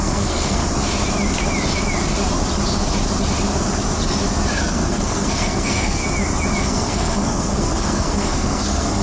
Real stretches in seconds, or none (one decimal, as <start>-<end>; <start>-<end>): 0.6-4.6; 6.0-6.6